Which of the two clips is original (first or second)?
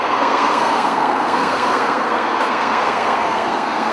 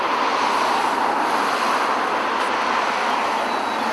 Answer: second